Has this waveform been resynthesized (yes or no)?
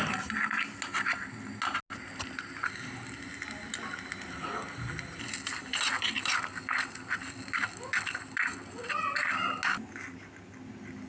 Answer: no